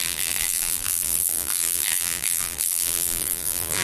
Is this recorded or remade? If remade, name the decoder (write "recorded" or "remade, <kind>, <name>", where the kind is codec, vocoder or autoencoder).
remade, vocoder, BigVGAN v2